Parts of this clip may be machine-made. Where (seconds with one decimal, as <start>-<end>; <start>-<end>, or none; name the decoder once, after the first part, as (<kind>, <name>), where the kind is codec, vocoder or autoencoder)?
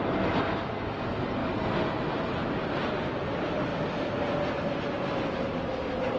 none